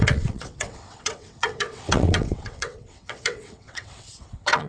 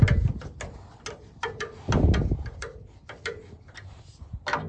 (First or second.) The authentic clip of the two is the second